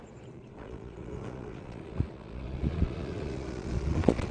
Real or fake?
fake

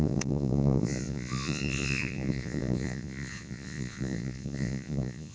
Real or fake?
fake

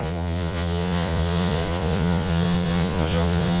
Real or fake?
fake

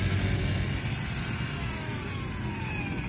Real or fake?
real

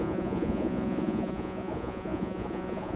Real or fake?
fake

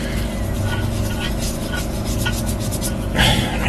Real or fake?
real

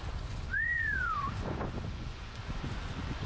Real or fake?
fake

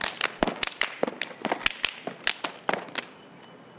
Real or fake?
real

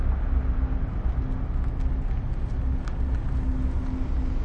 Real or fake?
real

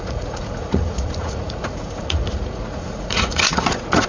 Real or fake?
fake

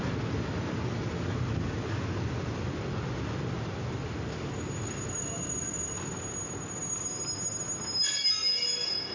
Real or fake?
real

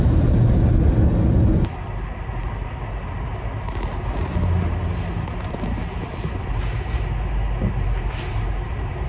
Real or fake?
real